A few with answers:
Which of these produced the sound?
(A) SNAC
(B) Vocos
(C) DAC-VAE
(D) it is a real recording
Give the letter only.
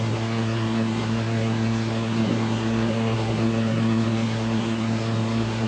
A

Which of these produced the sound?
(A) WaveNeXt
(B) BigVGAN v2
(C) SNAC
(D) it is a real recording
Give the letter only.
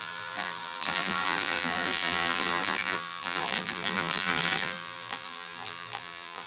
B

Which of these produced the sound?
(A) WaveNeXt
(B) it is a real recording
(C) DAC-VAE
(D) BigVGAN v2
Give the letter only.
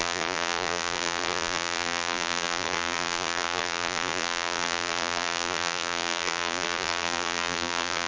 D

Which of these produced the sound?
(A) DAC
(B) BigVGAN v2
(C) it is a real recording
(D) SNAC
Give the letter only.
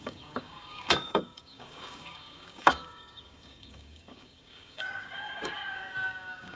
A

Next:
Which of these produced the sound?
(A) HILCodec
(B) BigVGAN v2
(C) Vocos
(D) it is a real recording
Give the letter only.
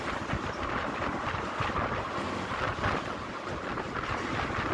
D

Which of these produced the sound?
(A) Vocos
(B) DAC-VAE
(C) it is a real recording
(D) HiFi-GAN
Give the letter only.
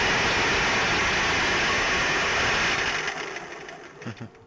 C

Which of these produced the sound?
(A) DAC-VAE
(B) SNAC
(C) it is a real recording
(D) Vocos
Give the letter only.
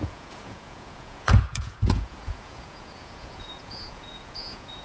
D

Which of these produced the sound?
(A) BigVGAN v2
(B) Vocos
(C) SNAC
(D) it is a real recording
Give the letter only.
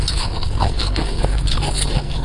C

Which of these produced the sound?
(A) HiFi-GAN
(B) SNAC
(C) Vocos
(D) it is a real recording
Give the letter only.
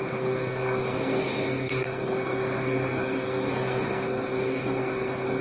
B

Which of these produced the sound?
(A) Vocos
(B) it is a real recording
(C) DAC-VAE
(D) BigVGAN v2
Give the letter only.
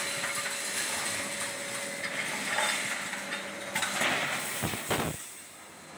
B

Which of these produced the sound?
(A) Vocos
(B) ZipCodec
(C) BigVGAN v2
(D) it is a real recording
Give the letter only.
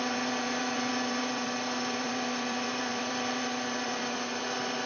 C